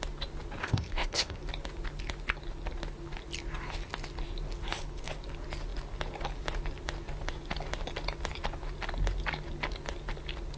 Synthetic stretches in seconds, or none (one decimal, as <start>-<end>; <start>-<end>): 0.6-1.4